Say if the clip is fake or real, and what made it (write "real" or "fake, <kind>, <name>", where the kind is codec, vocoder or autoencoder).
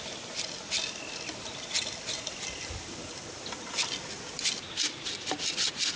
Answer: real